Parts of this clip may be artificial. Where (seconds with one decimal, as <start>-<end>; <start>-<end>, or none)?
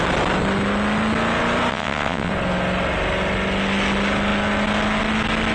1.7-2.3